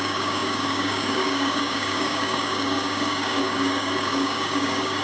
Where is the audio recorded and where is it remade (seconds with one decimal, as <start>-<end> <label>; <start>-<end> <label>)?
0.0-5.0 remade